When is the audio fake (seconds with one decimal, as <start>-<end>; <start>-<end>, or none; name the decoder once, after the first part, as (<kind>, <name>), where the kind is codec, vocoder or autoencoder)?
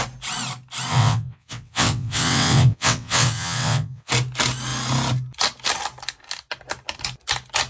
0.9-4.1 (vocoder, WaveNeXt)